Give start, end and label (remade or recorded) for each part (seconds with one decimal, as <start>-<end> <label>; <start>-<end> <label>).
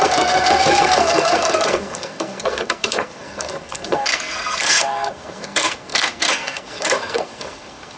0.0-8.0 remade